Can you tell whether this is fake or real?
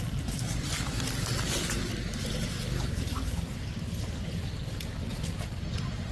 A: real